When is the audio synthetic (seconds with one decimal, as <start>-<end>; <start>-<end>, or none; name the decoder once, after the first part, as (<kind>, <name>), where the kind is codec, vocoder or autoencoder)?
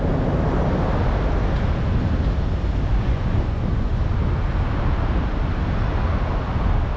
2.9-4.0 (vocoder, Vocos)